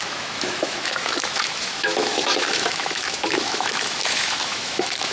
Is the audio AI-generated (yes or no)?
yes